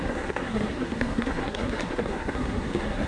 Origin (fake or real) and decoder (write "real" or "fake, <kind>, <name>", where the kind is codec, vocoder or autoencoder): fake, codec, SNAC